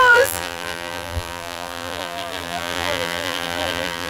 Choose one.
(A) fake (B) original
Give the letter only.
A